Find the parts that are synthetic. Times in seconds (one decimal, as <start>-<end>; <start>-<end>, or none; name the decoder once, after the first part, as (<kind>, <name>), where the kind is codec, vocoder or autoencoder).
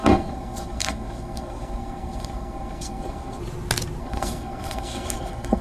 0.0-3.4 (codec, SNAC); 4.0-5.6